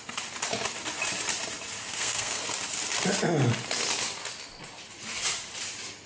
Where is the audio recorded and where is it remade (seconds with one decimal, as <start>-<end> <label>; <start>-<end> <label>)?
0.0-1.8 recorded; 1.8-2.4 remade; 2.4-6.1 recorded